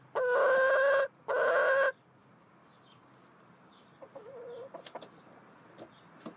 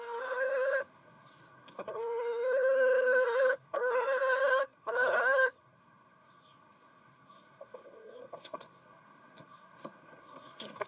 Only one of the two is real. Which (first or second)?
first